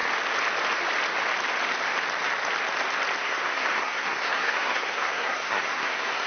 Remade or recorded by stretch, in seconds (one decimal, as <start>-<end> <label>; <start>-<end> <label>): 0.0-3.2 recorded; 3.2-6.3 remade